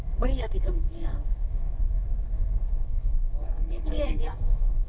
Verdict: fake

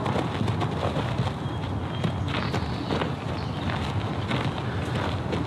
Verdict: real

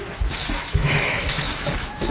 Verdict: fake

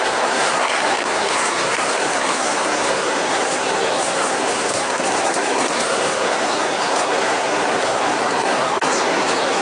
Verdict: fake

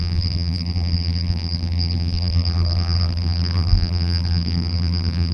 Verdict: fake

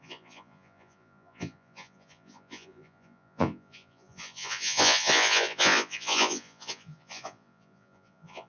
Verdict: fake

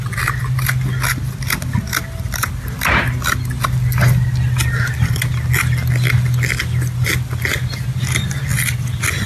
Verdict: real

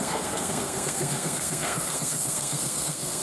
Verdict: fake